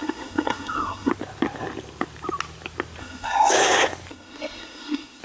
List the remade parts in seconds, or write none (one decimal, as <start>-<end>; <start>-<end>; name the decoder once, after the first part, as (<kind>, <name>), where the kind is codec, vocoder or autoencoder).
0.0-1.1 (codec, SNAC); 3.0-3.5; 4.1-5.2